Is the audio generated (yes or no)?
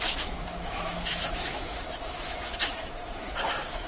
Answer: yes